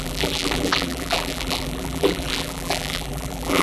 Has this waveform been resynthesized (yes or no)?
yes